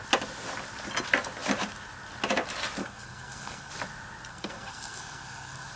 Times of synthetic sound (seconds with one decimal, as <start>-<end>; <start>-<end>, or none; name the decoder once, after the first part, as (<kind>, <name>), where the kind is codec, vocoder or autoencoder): 2.8-3.7 (codec, SNAC); 4.3-5.8